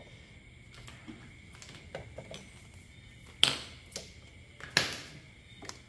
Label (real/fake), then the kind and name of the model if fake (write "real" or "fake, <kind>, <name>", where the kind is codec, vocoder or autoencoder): real